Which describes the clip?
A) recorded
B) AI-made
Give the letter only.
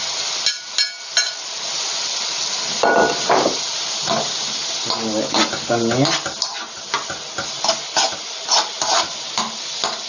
A